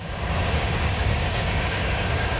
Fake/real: fake